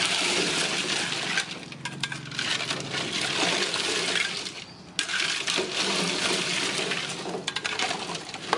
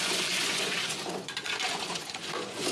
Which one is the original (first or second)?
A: first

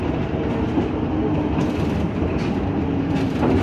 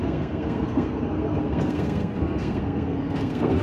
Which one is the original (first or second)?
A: first